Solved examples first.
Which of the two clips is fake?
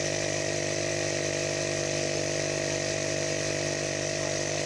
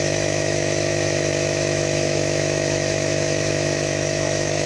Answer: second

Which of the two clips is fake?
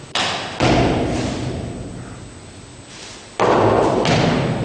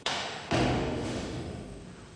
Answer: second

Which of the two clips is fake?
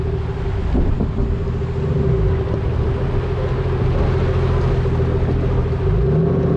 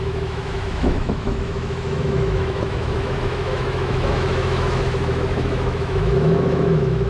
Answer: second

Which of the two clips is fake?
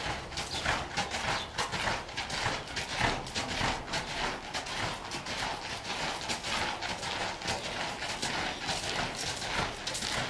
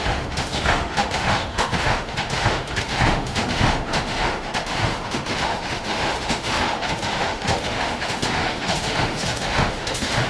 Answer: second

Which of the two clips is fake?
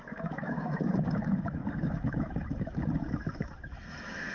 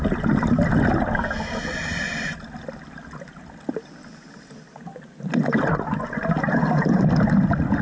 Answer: first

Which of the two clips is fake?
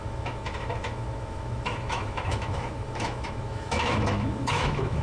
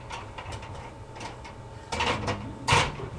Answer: first